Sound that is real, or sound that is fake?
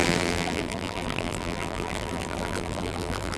fake